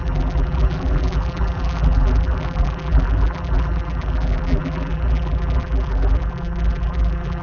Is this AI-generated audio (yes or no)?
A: yes